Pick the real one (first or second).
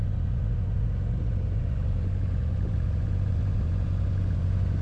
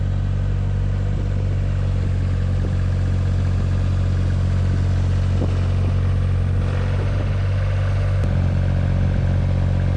second